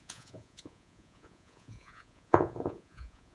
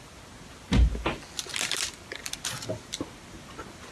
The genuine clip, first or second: second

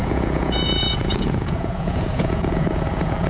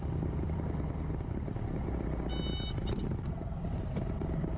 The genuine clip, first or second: second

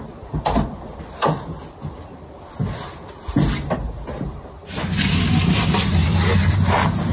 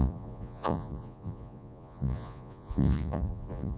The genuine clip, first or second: first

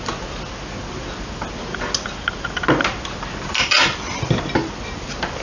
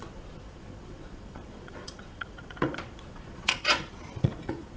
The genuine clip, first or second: first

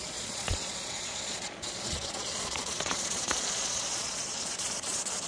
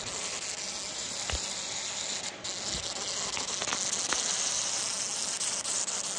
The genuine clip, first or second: second